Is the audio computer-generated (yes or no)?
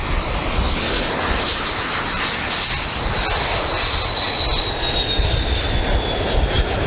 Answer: no